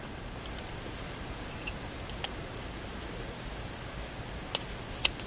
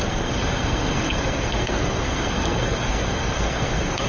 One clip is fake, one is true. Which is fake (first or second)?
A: second